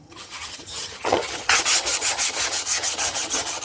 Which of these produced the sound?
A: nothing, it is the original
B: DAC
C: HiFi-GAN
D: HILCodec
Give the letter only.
C